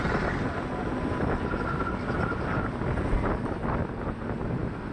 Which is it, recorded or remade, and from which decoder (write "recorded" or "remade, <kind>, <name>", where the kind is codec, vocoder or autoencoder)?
recorded